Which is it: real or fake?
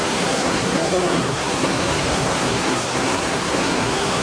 fake